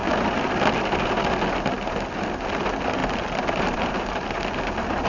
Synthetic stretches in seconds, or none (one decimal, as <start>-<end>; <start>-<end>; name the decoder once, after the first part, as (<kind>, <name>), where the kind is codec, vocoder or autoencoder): none

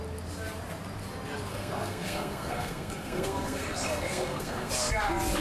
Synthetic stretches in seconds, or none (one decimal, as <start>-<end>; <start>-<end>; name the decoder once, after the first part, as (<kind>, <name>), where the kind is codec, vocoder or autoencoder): 1.5-4.7 (codec, SNAC)

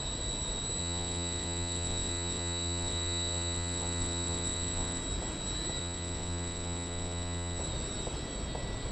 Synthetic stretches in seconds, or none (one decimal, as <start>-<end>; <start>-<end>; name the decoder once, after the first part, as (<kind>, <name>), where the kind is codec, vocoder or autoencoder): 0.8-5.0 (vocoder, WaveNeXt); 5.8-7.6

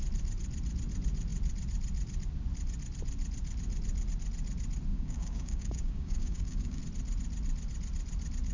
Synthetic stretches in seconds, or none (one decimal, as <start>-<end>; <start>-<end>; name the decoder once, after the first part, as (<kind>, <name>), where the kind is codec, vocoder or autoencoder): 4.9-6.8 (codec, DAC)

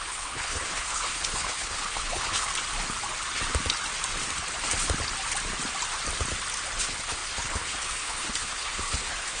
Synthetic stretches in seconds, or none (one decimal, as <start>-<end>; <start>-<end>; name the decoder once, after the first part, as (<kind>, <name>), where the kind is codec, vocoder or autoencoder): 0.0-2.5 (codec, HILCodec); 6.8-9.4

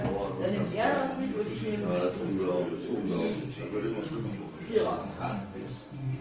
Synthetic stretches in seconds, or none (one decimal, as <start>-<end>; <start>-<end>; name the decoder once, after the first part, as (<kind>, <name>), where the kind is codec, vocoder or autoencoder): 5.0-6.2 (codec, SNAC)